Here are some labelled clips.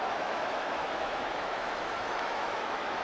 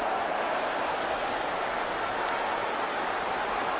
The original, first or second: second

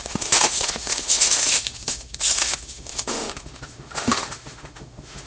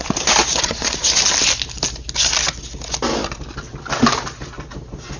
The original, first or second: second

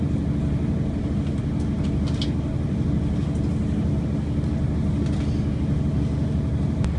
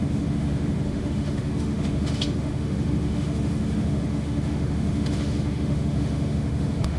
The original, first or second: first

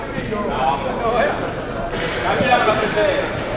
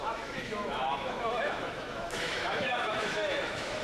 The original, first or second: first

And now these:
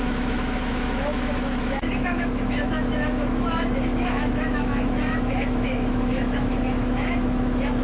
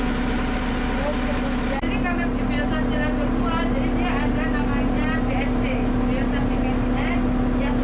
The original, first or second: second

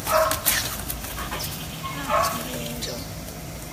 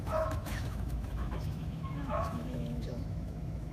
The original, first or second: first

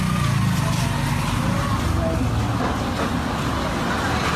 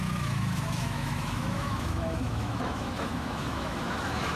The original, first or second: first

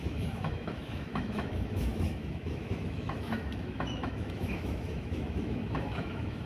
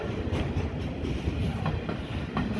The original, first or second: second